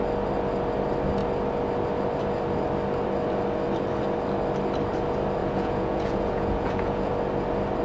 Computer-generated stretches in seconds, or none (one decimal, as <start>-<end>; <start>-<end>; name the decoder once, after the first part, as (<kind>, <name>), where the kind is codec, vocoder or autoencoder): 5.4-7.1 (vocoder, Vocos)